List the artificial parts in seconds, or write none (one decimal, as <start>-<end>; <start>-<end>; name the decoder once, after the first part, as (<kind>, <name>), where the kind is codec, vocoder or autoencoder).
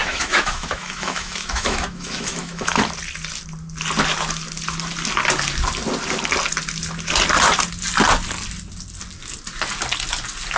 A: 0.0-2.8 (autoencoder, DAC-VAE)